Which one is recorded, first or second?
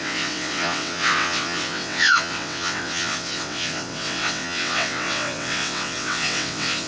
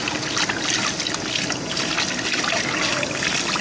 second